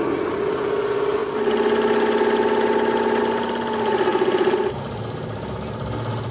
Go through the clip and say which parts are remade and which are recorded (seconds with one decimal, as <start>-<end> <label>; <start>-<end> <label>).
0.0-4.1 recorded; 4.1-4.7 remade; 4.7-6.3 recorded